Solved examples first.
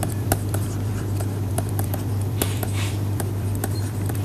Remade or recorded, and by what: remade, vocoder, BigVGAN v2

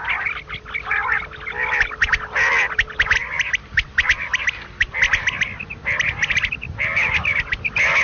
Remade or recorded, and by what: recorded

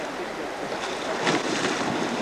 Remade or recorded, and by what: recorded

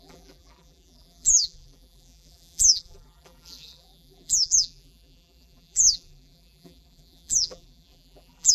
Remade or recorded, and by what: remade, vocoder, BigVGAN v2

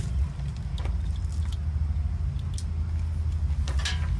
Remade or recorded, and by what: recorded